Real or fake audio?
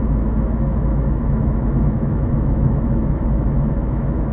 fake